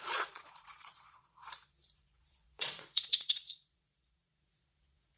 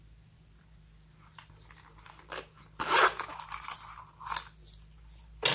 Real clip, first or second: second